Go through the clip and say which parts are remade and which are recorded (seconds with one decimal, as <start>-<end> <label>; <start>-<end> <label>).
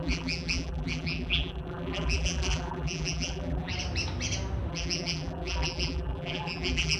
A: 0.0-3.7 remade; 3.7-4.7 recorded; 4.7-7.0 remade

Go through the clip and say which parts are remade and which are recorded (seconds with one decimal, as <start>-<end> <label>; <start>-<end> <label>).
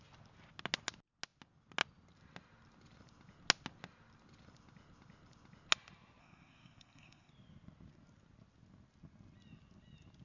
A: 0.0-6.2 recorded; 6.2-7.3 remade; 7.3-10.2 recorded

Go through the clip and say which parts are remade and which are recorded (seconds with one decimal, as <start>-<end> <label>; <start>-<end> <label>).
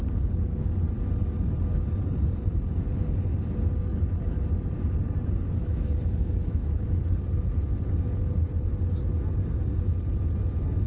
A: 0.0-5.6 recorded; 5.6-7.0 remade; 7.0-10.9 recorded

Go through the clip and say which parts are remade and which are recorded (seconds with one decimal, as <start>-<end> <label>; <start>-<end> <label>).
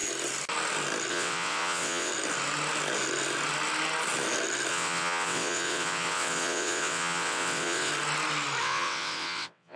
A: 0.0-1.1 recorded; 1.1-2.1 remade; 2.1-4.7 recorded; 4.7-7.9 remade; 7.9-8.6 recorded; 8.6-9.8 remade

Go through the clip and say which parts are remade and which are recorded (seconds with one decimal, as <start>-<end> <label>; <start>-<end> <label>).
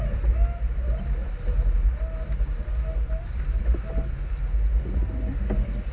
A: 0.0-5.9 recorded